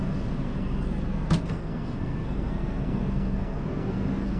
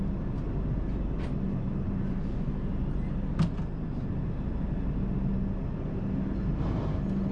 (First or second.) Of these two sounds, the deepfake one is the first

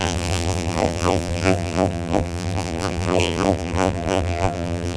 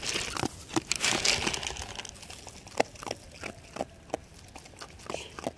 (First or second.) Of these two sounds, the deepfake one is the first